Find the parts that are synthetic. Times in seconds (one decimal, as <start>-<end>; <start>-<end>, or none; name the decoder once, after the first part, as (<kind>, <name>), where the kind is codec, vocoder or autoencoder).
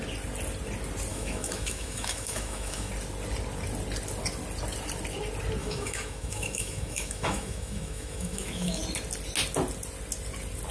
1.1-2.9 (autoencoder, DAC-VAE); 5.6-8.8